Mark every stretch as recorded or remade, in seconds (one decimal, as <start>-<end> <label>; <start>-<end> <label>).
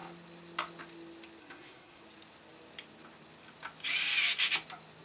0.0-1.4 recorded; 1.4-2.0 remade; 2.0-5.0 recorded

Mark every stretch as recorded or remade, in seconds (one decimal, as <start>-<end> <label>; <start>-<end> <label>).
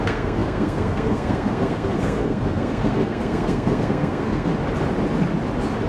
0.0-4.5 remade; 4.5-5.9 recorded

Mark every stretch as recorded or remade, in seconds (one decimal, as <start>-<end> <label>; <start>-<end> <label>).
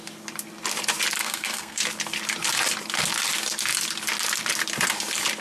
0.0-1.2 recorded; 1.2-1.8 remade; 1.8-5.4 recorded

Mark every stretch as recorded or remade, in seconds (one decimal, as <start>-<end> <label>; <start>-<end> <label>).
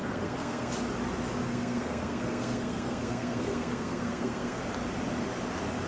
0.0-0.7 remade; 0.7-1.5 recorded; 1.5-4.6 remade; 4.6-5.9 recorded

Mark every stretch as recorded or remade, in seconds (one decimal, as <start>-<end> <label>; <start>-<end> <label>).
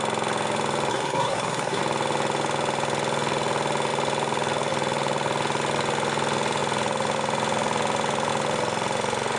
0.0-0.9 recorded; 0.9-1.8 remade; 1.8-9.4 recorded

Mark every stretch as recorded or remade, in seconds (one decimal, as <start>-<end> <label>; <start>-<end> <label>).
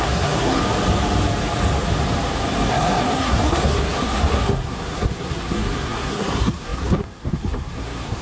0.0-0.6 remade; 0.6-2.7 recorded; 2.7-8.2 remade